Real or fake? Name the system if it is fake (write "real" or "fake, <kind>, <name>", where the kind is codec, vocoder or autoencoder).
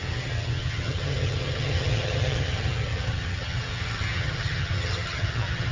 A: fake, vocoder, HiFi-GAN